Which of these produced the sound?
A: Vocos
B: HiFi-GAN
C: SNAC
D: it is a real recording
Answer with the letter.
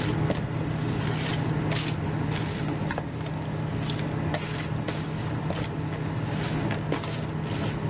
D